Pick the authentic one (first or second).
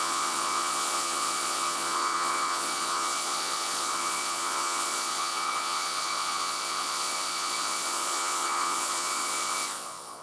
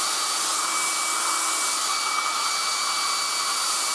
second